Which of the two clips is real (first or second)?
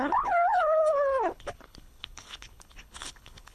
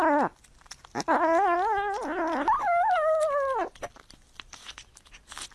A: second